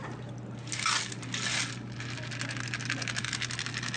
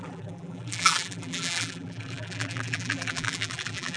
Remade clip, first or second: second